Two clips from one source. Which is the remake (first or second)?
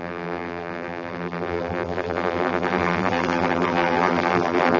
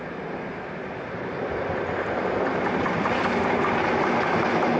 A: first